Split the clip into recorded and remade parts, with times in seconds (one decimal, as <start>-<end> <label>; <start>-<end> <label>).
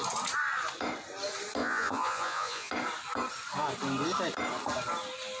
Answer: 0.0-1.6 recorded; 1.6-2.7 remade; 2.7-5.4 recorded